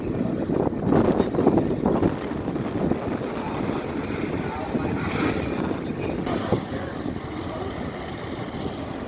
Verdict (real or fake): real